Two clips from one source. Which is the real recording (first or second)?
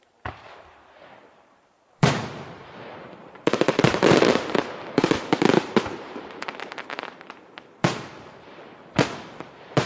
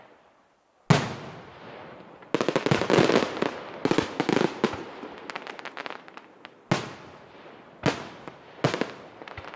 second